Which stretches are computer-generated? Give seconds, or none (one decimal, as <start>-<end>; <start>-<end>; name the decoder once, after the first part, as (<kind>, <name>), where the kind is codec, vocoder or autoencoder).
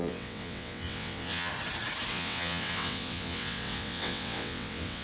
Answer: 0.0-1.5 (vocoder, WaveNeXt); 2.1-5.0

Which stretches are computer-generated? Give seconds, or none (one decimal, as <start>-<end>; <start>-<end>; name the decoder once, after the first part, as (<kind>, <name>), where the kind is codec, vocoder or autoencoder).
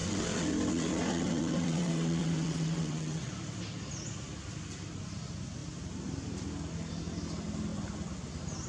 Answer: 0.0-3.3 (vocoder, WaveNeXt)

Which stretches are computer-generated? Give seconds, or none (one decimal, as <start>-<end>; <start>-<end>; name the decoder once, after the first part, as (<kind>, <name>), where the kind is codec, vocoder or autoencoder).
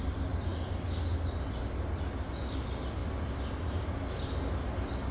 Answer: none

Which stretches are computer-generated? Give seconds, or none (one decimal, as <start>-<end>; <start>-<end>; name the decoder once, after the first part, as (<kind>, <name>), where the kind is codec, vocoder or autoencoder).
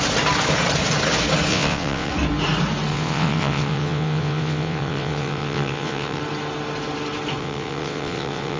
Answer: 1.5-2.1 (vocoder, WaveNeXt); 2.9-6.2; 7.4-8.6